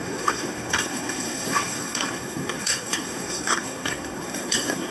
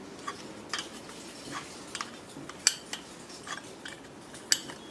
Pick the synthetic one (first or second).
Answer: first